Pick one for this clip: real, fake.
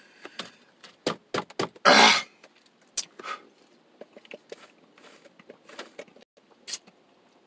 real